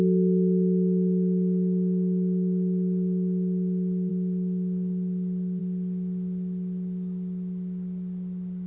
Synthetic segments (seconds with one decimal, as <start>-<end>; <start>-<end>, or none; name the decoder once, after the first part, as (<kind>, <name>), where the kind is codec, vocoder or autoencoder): none